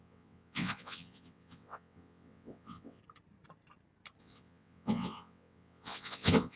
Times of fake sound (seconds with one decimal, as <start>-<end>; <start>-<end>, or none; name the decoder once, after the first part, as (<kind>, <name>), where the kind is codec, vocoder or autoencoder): 0.0-3.0 (vocoder, WaveNeXt); 4.2-6.6